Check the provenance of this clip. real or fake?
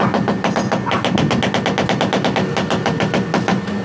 real